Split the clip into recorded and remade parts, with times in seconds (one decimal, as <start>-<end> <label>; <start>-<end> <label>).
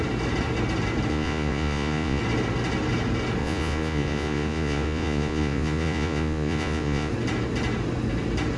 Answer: 0.0-1.1 recorded; 1.1-2.2 remade; 2.2-3.4 recorded; 3.4-7.1 remade; 7.1-8.6 recorded